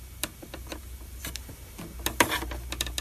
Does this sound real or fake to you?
real